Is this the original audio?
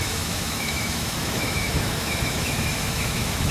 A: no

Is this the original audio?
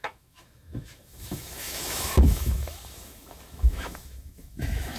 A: no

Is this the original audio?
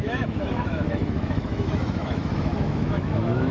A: no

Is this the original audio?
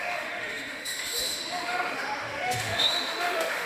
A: no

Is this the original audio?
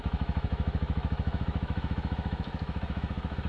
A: no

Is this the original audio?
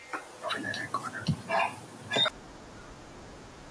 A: yes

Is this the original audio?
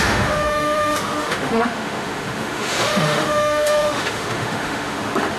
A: no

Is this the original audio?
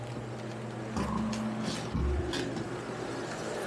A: yes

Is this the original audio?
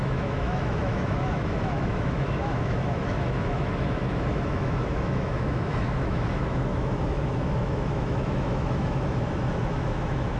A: no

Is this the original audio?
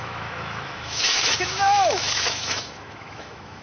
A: no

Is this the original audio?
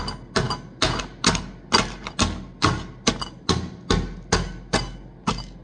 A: yes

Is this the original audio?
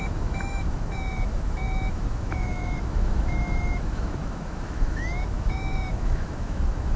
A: no